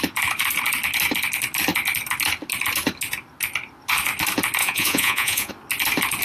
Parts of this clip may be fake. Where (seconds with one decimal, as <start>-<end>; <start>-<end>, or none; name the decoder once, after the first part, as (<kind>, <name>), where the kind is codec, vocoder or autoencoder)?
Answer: 4.6-5.5 (vocoder, Vocos)